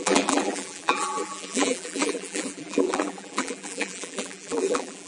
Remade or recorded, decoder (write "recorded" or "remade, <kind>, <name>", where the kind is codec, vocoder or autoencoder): remade, vocoder, BigVGAN v2